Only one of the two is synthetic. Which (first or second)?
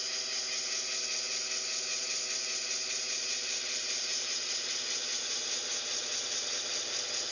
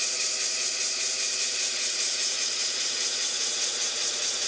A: second